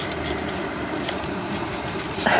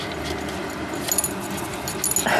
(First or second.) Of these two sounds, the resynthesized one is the first